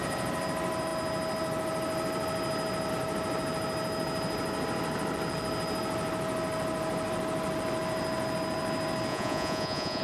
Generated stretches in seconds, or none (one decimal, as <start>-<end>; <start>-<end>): 9.1-10.0

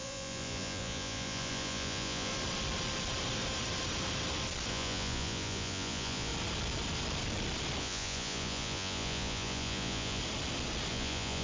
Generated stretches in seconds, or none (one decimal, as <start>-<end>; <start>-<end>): 0.0-2.3; 4.7-6.3; 7.8-10.2; 10.9-11.4

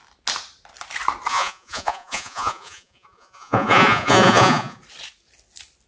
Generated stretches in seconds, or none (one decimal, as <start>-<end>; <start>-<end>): 1.3-4.8

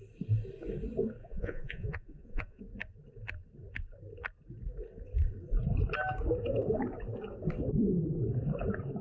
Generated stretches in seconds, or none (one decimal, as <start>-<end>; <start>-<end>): 1.2-2.6